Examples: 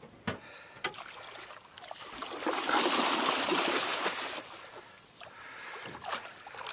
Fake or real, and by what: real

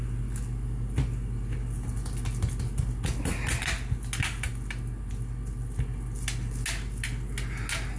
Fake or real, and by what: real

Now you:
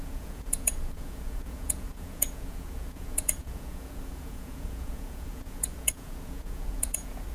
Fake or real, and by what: fake, vocoder, Vocos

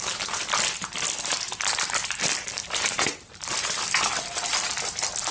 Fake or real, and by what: real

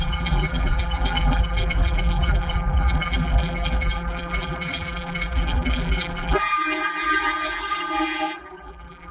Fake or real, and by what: fake, vocoder, BigVGAN v2